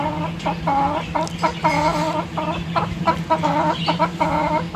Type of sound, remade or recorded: recorded